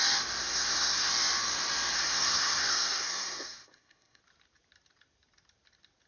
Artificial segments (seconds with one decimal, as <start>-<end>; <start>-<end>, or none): 0.4-1.1; 1.9-4.2